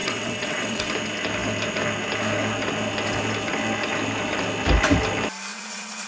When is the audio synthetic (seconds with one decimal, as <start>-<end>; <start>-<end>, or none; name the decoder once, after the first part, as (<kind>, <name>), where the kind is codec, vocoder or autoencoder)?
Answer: 0.0-0.9 (vocoder, WaveNeXt); 5.5-6.1